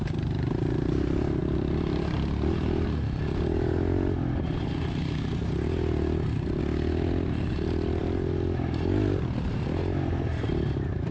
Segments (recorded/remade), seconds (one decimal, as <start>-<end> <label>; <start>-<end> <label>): 0.0-11.1 recorded